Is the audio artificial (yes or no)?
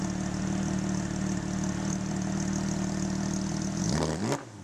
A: no